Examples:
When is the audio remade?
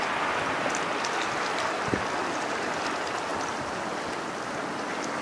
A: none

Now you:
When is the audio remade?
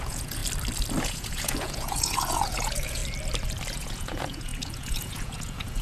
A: 0.0-0.4 (vocoder, Vocos); 1.0-3.0; 3.7-5.8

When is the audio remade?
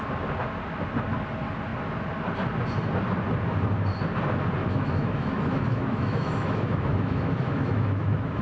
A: 4.6-8.4 (autoencoder, DAC-VAE)